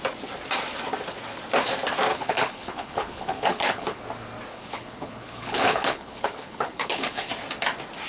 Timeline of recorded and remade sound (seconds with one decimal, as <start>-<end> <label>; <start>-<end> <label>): 0.0-2.1 recorded; 2.1-4.0 remade; 4.0-4.5 recorded; 4.5-7.3 remade; 7.3-8.1 recorded